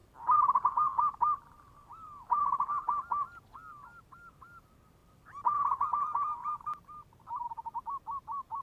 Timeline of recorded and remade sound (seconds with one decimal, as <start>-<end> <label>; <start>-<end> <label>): 0.0-2.7 remade; 2.7-5.0 recorded; 5.0-8.6 remade